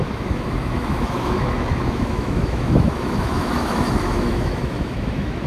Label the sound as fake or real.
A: fake